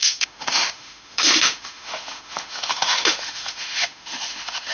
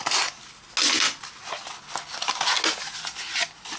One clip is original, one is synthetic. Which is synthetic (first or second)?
first